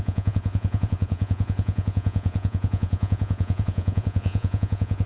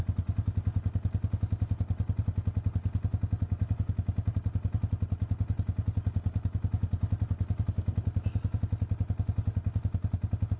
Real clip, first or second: second